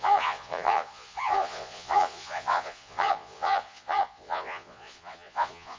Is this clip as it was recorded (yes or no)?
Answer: no